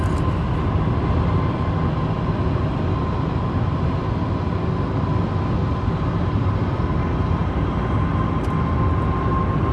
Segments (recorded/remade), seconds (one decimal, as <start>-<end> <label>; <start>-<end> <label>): 0.0-7.4 recorded; 7.4-8.1 remade; 8.1-9.7 recorded

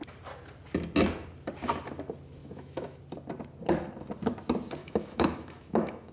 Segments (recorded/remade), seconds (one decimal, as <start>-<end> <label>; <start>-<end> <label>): 0.0-2.4 recorded; 2.4-3.0 remade; 3.0-4.8 recorded; 4.8-6.1 remade

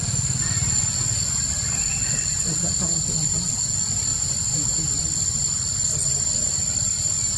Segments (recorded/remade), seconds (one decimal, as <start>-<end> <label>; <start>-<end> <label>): 0.0-1.0 recorded; 1.0-2.4 remade; 2.4-4.1 recorded; 4.1-7.4 remade

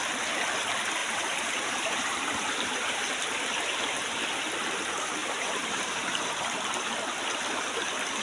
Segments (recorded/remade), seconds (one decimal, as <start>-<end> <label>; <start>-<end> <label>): 0.0-1.0 recorded; 1.0-3.1 remade; 3.1-5.2 recorded; 5.2-6.9 remade; 6.9-8.2 recorded

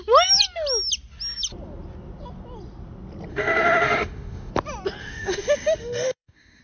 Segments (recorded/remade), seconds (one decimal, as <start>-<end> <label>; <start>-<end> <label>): 0.0-3.3 recorded; 3.3-4.5 remade; 4.5-5.0 recorded; 5.0-6.6 remade